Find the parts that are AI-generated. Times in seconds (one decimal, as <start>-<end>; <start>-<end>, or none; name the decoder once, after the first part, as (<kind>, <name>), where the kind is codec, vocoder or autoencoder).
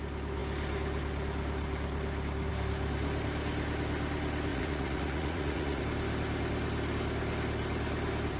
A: 4.5-5.8 (vocoder, Vocos)